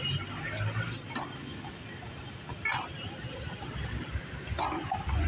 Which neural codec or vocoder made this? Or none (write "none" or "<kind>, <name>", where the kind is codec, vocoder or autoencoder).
none